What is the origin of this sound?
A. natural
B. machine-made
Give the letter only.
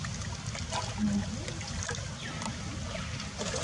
A